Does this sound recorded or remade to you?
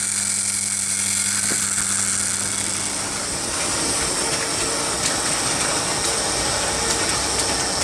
recorded